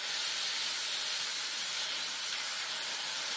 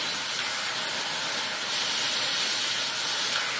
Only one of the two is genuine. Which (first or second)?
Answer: second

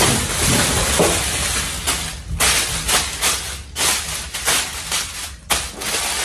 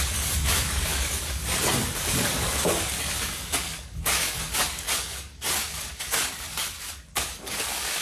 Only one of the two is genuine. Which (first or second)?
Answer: first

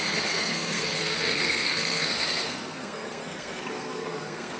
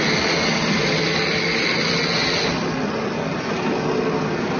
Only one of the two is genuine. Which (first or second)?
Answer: second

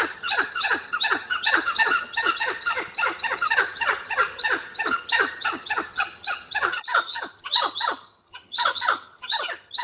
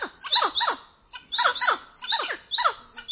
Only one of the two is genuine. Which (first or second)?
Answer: second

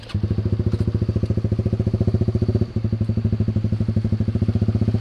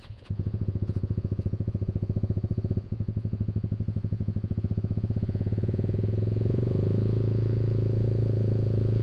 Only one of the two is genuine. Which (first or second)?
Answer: first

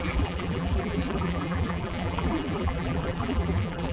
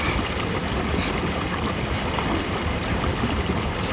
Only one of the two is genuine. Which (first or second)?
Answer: second